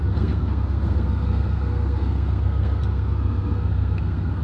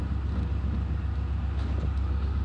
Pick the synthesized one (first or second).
first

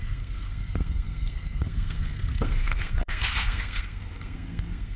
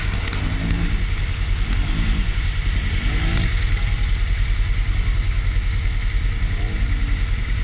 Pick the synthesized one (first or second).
first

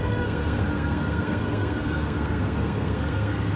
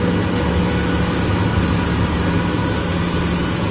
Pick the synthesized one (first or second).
first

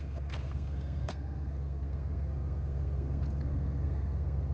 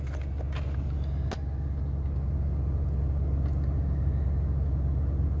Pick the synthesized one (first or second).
first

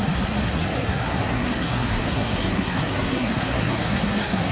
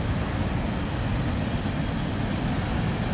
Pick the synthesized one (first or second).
first